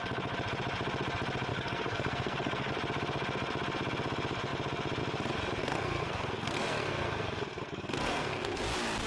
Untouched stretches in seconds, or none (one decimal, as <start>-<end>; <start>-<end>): 0.0-1.5; 2.7-5.6; 8.6-9.1